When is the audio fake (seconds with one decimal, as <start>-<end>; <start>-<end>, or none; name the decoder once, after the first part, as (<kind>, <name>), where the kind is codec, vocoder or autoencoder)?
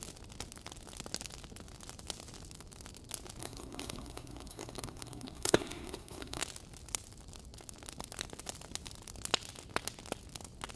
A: 3.4-6.4 (codec, SNAC)